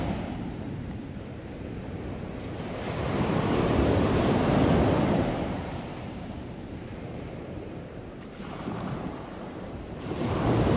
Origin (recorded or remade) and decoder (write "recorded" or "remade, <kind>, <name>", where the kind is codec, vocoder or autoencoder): remade, vocoder, BigVGAN v2